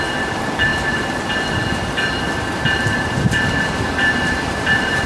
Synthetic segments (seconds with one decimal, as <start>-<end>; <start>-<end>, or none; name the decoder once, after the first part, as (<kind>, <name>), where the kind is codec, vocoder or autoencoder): 0.0-0.7 (vocoder, BigVGAN v2); 3.6-5.1